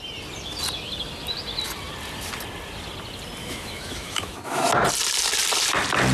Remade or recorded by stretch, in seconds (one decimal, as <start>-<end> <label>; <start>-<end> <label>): 0.0-3.4 recorded; 3.4-4.7 remade; 4.7-6.1 recorded